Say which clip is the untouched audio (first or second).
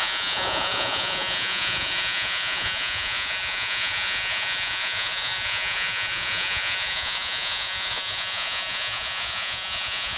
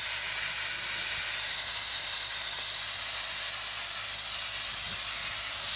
second